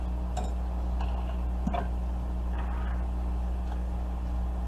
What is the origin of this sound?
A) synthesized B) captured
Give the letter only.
B